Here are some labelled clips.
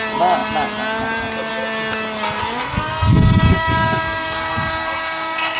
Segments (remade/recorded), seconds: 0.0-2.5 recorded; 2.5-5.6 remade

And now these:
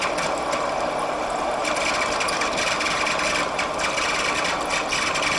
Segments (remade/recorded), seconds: 0.0-5.4 recorded

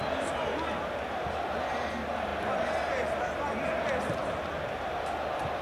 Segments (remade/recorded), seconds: 0.0-5.6 recorded